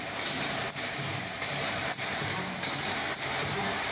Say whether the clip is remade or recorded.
recorded